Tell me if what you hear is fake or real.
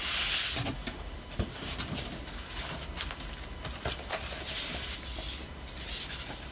real